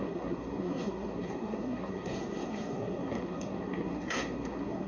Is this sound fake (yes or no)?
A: yes